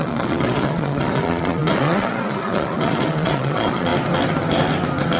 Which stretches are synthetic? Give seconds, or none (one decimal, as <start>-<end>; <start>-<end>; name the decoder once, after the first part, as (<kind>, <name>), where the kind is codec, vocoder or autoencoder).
0.0-3.9 (vocoder, Vocos)